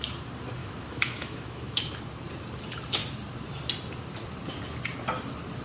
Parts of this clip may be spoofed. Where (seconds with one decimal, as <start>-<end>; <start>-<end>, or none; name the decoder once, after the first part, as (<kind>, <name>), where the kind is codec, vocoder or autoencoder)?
0.6-2.0 (autoencoder, DAC-VAE)